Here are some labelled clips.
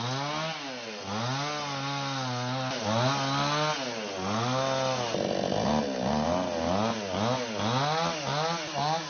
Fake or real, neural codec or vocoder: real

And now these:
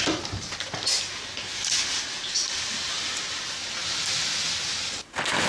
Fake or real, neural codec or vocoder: real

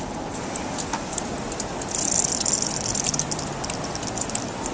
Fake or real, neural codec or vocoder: real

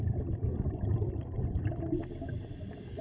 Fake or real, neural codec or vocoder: real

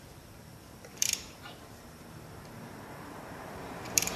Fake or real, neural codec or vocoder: fake, vocoder, BigVGAN v2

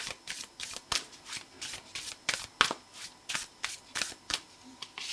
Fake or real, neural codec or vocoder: real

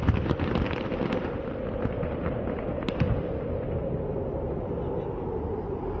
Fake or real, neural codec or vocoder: real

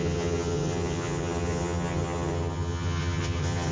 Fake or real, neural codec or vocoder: fake, vocoder, HiFi-GAN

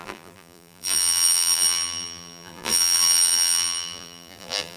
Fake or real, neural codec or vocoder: fake, vocoder, BigVGAN v2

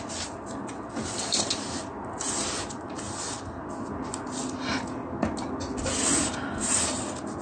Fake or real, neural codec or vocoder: real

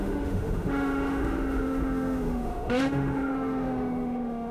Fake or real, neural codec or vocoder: fake, autoencoder, DAC-VAE